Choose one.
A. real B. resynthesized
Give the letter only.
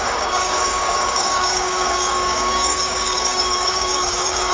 B